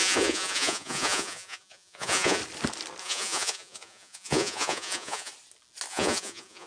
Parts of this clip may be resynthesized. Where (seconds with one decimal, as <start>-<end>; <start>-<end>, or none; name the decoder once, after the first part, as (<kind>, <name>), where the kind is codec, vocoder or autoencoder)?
0.0-2.4 (vocoder, Vocos); 3.0-5.3; 5.9-6.7